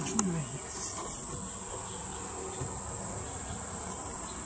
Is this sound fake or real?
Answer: real